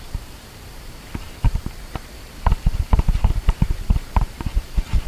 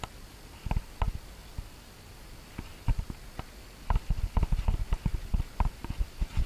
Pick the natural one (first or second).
second